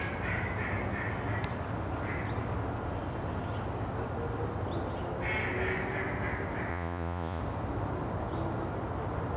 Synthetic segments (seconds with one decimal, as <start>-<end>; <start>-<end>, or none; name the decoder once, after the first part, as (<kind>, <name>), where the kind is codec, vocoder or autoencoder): 6.7-7.4 (vocoder, Vocos)